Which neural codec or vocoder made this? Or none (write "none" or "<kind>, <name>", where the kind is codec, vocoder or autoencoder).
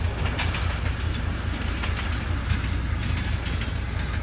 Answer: none